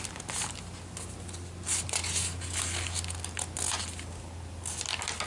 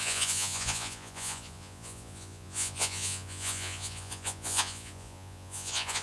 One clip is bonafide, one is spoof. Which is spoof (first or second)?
second